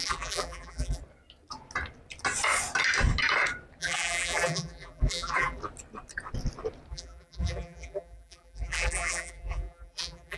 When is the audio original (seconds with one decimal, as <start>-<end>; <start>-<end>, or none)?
1.0-3.8; 5.6-6.9